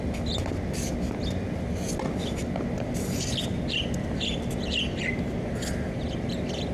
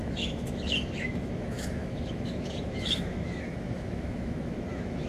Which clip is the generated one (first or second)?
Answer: second